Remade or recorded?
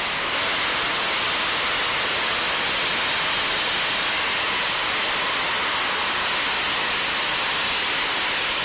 recorded